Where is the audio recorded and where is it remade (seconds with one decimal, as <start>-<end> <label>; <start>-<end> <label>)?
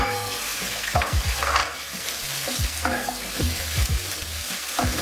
0.0-5.0 remade